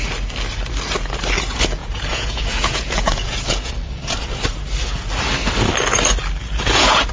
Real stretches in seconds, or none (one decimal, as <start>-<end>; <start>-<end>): 0.0-1.8; 3.7-6.4